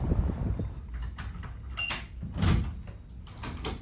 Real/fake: real